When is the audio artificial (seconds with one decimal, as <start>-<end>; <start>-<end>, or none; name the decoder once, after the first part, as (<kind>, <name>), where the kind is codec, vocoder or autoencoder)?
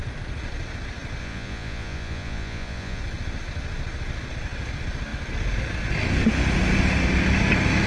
1.2-3.0 (vocoder, Vocos)